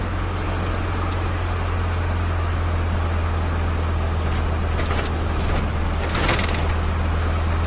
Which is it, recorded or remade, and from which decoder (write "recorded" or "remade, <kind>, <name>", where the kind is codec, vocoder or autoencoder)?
recorded